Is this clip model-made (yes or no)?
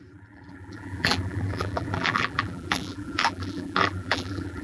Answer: yes